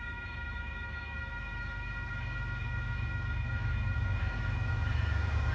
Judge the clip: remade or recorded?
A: remade